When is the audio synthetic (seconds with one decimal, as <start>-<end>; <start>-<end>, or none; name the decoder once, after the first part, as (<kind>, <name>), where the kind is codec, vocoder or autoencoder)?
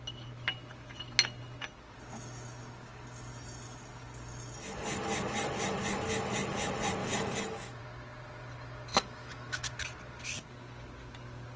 7.0-7.8 (autoencoder, DAC-VAE); 8.9-9.7